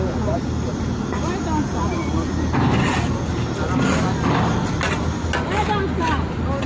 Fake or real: real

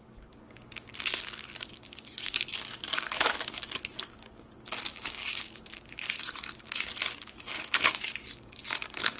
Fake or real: fake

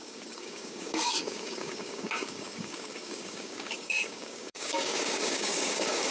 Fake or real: fake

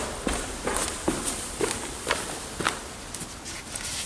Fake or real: real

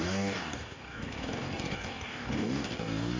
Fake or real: fake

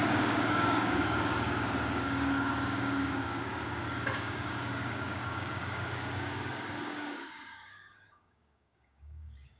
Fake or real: fake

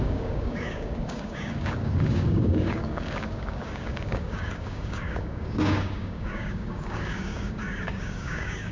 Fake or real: fake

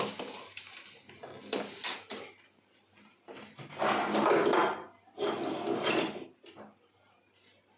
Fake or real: real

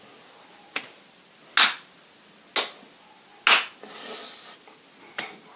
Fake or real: real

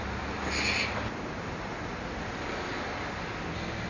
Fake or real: real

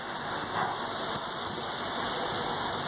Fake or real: real